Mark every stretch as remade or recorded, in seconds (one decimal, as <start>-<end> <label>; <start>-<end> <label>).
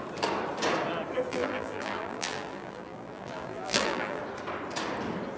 0.0-1.3 recorded; 1.3-4.2 remade; 4.2-5.4 recorded